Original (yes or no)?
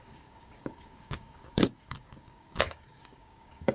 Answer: no